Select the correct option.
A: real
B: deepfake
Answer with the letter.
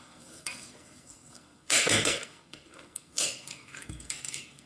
B